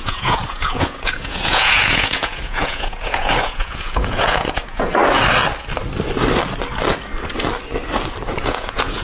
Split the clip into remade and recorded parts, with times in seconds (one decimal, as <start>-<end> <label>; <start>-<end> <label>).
0.0-5.0 remade; 5.0-8.4 recorded; 8.4-9.0 remade